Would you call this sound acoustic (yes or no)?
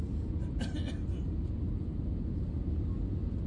yes